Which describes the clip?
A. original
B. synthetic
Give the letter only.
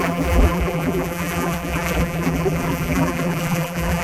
B